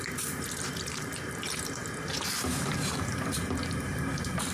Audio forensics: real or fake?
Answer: fake